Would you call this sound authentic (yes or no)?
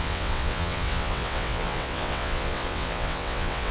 no